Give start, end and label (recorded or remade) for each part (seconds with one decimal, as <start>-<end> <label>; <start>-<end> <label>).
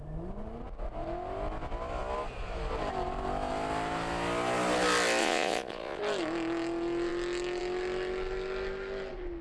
0.0-5.2 recorded; 5.2-6.0 remade; 6.0-9.4 recorded